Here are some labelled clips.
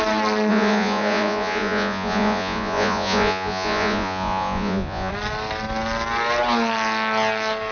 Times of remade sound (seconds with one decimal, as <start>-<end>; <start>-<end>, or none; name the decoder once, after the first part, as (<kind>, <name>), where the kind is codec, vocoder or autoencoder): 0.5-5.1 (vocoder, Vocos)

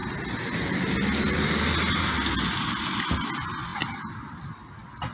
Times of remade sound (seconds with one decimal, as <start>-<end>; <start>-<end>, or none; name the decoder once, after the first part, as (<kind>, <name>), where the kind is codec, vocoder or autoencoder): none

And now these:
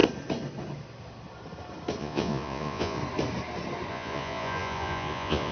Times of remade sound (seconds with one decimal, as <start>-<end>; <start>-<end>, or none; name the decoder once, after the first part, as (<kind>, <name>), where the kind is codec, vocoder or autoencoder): 2.0-3.0 (vocoder, Vocos); 3.9-5.5

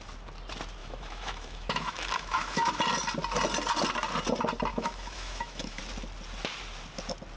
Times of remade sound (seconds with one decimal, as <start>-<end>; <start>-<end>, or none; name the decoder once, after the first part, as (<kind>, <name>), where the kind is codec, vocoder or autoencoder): 0.8-2.8 (autoencoder, DAC-VAE); 4.7-5.8

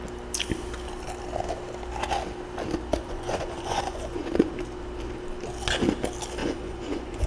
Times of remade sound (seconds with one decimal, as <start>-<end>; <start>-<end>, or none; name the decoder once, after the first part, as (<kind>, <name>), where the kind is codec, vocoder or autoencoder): 2.9-4.5 (vocoder, Vocos); 6.4-7.3

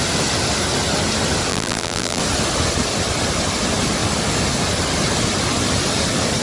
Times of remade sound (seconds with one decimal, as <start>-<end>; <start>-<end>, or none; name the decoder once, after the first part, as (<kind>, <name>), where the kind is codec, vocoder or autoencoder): 1.5-2.2 (vocoder, BigVGAN v2)

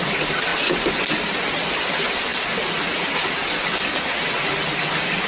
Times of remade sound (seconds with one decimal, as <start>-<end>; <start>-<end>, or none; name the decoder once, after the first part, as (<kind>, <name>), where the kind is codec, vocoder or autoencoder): none

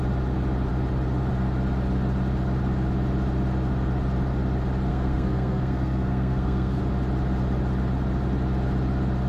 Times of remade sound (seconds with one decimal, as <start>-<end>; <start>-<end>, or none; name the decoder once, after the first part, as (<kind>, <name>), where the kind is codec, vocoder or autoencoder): 4.9-6.8 (codec, SNAC)